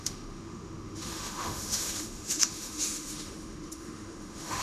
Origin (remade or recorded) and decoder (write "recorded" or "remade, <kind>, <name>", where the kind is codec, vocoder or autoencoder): remade, autoencoder, DAC-VAE